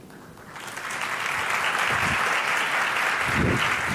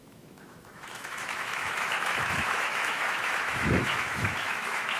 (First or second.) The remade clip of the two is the second